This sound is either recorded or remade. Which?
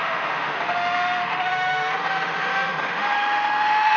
remade